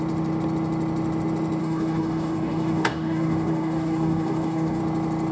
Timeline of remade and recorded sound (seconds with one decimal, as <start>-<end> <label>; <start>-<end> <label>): 0.0-1.6 recorded; 1.6-4.8 remade; 4.8-5.3 recorded